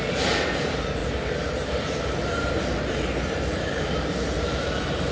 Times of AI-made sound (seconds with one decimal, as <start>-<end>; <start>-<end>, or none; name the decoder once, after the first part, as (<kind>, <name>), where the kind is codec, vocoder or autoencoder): 0.0-5.1 (vocoder, BigVGAN v2)